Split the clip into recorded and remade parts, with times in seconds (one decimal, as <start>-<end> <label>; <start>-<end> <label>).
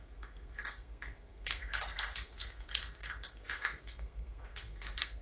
0.0-5.2 remade